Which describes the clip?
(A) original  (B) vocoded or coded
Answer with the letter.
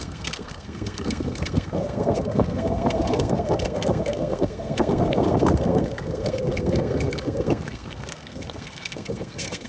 B